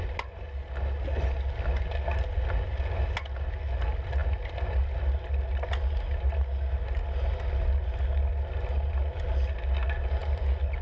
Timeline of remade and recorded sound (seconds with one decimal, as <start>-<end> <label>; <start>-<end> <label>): 0.0-10.8 recorded